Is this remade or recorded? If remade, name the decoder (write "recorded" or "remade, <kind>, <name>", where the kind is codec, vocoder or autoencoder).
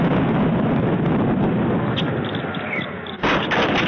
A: recorded